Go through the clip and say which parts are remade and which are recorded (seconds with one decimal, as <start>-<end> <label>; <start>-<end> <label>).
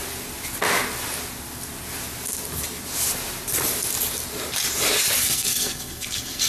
0.0-5.2 recorded; 5.2-6.5 remade